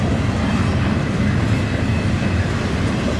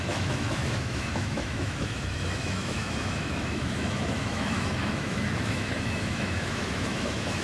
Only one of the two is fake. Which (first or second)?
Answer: second